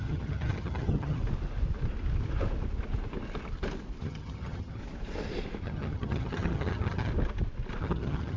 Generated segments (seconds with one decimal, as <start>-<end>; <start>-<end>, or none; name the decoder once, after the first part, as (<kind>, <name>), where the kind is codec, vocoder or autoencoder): 0.0-1.2 (vocoder, HiFi-GAN); 4.0-4.8; 5.6-7.1; 7.8-8.4